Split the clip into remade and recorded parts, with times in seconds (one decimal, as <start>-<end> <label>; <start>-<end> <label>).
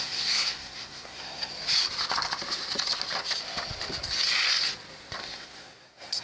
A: 0.0-1.5 remade; 1.5-5.2 recorded; 5.2-6.2 remade